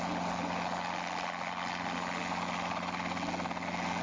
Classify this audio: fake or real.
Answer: real